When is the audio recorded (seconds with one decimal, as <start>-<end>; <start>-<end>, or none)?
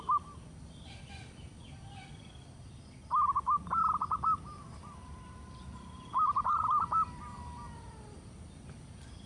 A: 0.0-3.0; 7.2-9.3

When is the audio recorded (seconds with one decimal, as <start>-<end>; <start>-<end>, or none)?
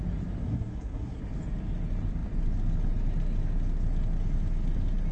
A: 0.0-0.4; 1.2-5.1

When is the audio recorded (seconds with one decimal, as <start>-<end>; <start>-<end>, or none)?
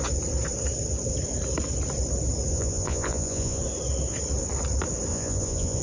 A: 0.0-2.5; 3.6-5.1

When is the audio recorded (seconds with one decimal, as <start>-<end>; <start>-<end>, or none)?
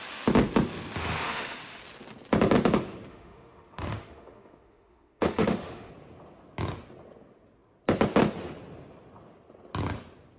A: 0.0-1.0; 1.8-3.1; 5.9-10.4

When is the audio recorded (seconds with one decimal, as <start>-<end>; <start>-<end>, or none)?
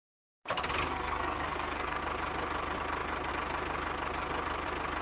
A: 0.0-0.9; 2.0-5.0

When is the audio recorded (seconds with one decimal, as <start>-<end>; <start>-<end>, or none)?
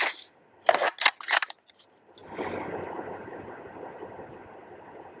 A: 0.0-5.2